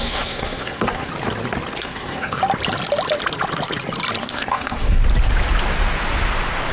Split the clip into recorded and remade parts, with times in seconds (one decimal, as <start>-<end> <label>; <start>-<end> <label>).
0.0-1.1 remade; 1.1-1.8 recorded; 1.8-2.4 remade; 2.4-4.2 recorded; 4.2-5.0 remade; 5.0-6.7 recorded